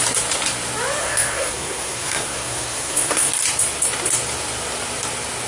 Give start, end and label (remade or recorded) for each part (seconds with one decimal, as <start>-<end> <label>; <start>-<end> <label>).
0.0-1.0 recorded; 1.0-3.3 remade; 3.3-5.5 recorded